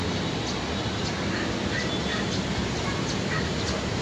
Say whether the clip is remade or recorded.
recorded